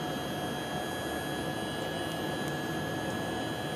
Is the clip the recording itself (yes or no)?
yes